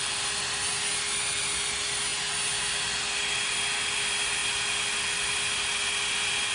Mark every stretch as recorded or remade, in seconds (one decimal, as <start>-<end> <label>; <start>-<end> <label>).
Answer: 0.0-6.5 recorded